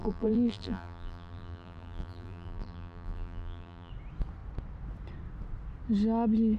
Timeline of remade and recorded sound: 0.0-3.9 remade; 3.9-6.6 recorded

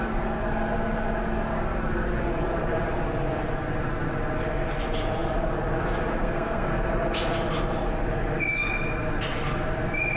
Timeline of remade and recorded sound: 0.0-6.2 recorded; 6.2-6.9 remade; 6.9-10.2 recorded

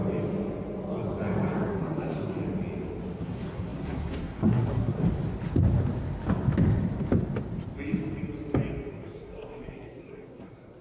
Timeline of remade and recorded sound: 0.0-1.7 recorded; 1.7-2.4 remade; 2.4-3.2 recorded; 3.2-5.0 remade; 5.0-8.9 recorded; 8.9-10.8 remade